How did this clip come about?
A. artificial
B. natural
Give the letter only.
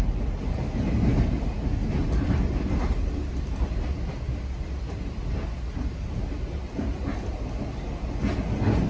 B